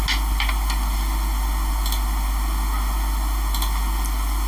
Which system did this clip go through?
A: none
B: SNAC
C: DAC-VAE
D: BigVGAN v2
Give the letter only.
A